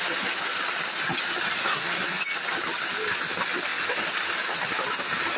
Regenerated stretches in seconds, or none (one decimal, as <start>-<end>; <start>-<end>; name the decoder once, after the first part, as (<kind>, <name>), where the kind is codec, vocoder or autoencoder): 1.6-2.2 (codec, SNAC)